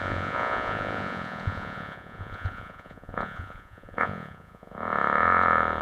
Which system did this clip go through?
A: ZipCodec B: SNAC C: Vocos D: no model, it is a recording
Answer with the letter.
C